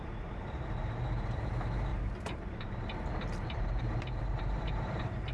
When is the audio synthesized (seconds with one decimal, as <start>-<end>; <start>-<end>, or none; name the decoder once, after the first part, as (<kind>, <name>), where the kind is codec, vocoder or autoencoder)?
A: 0.0-5.3 (vocoder, BigVGAN v2)